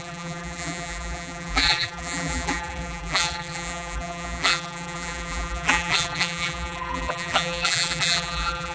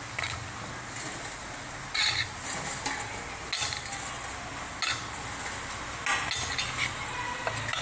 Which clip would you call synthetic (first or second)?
first